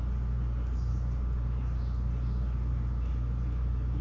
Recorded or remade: recorded